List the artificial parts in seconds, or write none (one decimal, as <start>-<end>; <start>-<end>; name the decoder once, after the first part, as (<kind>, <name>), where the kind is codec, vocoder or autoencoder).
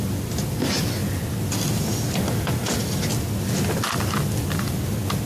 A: none